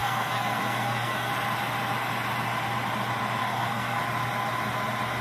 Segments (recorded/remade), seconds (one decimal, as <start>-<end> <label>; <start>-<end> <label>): 0.0-1.3 remade; 1.3-3.4 recorded; 3.4-4.0 remade; 4.0-5.2 recorded